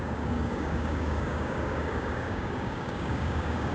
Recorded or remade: remade